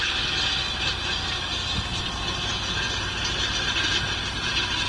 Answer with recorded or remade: recorded